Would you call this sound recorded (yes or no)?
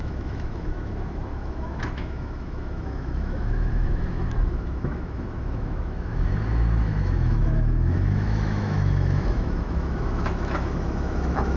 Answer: no